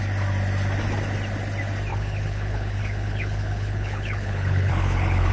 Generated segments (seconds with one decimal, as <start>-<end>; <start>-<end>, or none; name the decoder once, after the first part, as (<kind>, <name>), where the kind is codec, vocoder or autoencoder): 1.9-5.3 (codec, HILCodec)